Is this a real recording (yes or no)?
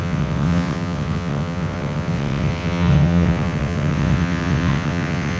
no